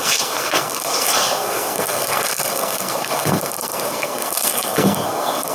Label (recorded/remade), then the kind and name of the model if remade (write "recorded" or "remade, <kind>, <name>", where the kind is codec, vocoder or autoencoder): remade, codec, SNAC